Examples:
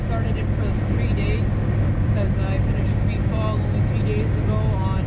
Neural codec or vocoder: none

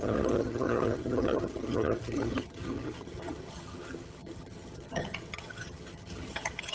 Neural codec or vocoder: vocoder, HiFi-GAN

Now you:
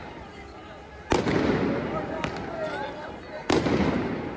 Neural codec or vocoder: none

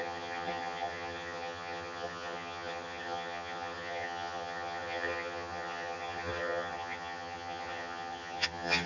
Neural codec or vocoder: vocoder, HiFi-GAN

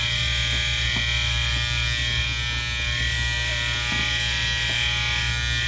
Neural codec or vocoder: none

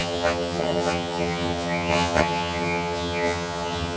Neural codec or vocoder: vocoder, HiFi-GAN